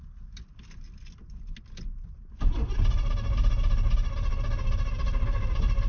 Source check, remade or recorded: recorded